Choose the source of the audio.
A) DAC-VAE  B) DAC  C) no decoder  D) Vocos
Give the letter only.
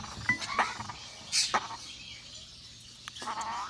C